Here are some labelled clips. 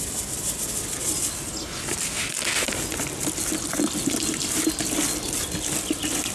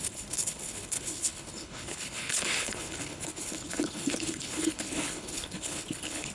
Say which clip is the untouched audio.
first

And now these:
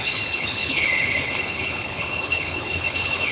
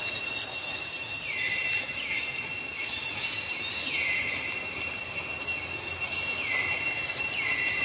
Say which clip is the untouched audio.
second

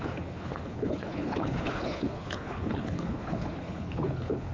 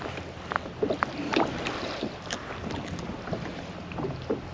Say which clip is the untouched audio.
second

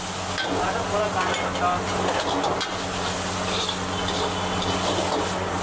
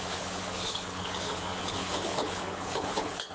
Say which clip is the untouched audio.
first